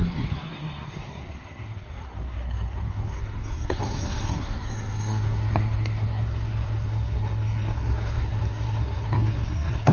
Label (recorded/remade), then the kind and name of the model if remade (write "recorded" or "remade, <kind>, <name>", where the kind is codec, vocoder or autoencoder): remade, codec, SNAC